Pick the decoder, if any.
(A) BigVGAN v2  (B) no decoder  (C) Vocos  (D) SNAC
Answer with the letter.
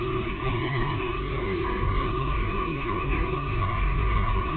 D